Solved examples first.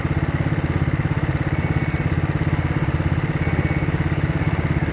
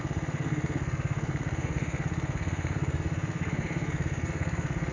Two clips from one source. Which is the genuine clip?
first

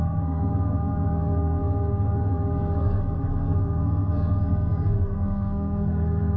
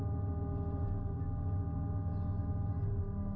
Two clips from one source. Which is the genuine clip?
second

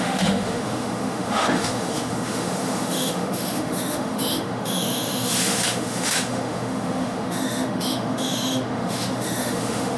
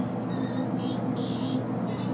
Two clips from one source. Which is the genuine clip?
second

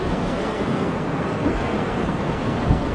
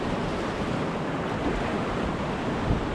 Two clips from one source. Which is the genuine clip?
second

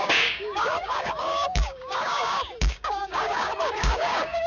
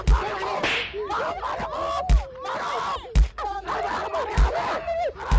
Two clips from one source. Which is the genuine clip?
second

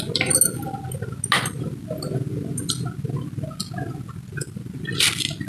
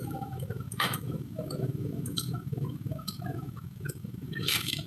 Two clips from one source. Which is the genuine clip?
first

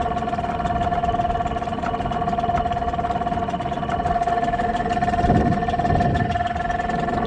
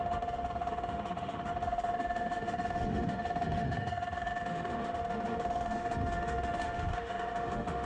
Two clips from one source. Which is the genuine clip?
first